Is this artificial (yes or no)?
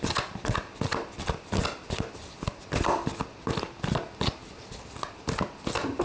no